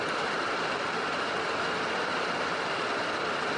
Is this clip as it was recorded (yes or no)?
yes